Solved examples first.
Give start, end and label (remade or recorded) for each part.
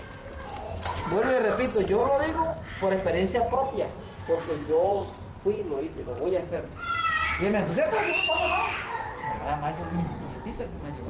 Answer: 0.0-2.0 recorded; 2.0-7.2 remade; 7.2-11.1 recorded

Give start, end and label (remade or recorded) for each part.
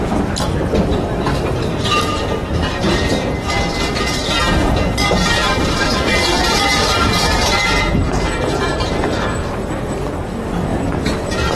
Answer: 0.0-0.9 recorded; 0.9-3.2 remade; 3.2-5.0 recorded; 5.0-5.9 remade; 5.9-6.8 recorded; 6.8-9.7 remade; 9.7-11.5 recorded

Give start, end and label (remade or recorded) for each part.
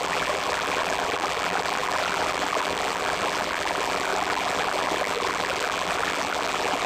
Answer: 0.0-6.9 remade